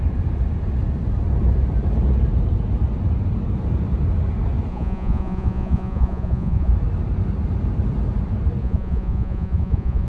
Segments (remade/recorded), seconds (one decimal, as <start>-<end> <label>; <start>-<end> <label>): 0.0-4.7 recorded; 4.7-6.7 remade; 6.7-8.6 recorded; 8.6-10.1 remade